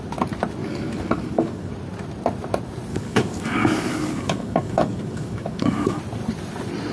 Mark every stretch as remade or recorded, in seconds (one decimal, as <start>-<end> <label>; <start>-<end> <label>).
0.0-0.6 recorded; 0.6-1.7 remade; 1.7-2.9 recorded; 2.9-6.0 remade; 6.0-6.9 recorded